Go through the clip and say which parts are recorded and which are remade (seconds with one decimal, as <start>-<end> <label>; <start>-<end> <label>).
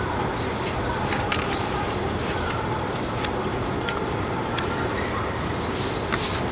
0.0-1.3 recorded; 1.3-3.1 remade; 3.1-6.5 recorded